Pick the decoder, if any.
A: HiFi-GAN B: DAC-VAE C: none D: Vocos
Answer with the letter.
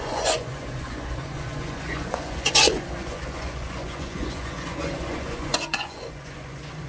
D